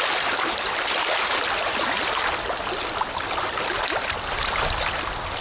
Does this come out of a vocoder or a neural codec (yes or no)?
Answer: no